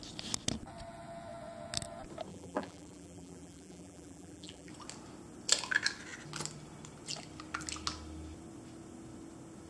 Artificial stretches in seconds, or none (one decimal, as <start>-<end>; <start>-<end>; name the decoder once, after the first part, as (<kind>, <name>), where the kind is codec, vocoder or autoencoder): 2.3-4.7 (vocoder, BigVGAN v2)